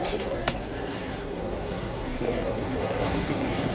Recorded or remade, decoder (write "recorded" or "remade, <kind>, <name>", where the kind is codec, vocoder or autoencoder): remade, codec, SNAC